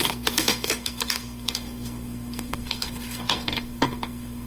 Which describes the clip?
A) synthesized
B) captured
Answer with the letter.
A